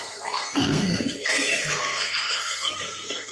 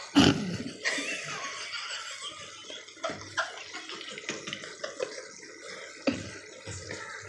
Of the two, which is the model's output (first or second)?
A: first